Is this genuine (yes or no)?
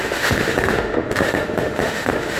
no